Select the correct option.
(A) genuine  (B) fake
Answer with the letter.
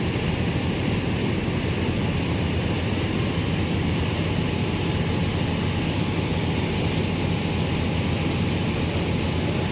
A